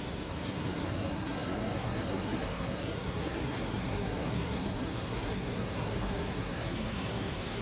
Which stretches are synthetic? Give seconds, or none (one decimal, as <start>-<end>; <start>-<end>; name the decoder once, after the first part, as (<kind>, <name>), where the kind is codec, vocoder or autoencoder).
0.0-7.6 (codec, SNAC)